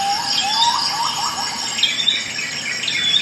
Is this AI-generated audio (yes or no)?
no